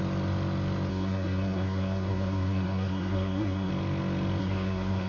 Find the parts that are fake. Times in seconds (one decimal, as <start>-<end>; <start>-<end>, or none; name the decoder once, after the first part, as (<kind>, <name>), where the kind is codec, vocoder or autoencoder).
0.9-3.7 (codec, SNAC); 4.4-5.1